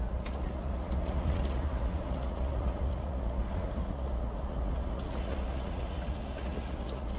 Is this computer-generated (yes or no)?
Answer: yes